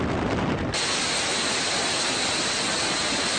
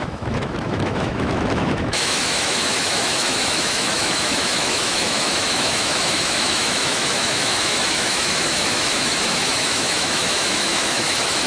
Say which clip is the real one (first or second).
first